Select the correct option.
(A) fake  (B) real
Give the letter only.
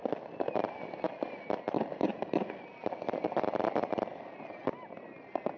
B